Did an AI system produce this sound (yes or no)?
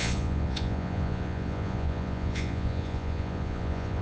yes